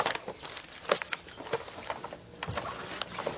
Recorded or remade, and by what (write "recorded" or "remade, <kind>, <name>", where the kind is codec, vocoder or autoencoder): recorded